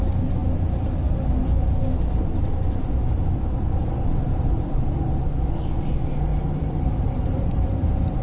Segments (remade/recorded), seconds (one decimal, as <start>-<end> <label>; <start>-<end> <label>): 0.0-3.8 recorded; 3.8-5.2 remade; 5.2-6.3 recorded; 6.3-8.2 remade